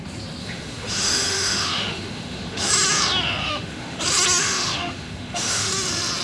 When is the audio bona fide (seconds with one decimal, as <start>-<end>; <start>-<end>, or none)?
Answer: 0.0-0.4; 2.7-3.4; 4.0-4.4; 5.7-6.2